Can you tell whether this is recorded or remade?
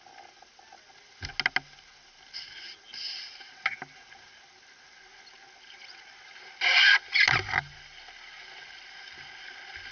recorded